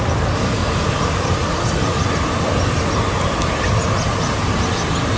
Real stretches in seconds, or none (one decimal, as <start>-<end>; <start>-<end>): 0.0-5.2